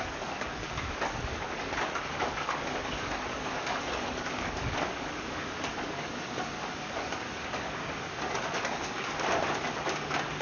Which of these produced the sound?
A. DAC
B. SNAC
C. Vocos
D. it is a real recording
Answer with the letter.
A